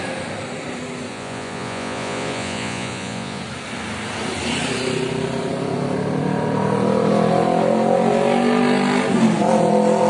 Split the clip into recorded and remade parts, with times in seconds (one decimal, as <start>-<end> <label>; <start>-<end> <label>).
0.0-1.1 recorded; 1.1-3.4 remade; 3.4-10.1 recorded